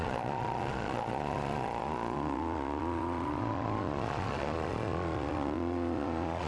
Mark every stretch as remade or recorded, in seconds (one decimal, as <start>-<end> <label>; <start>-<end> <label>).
0.0-6.5 remade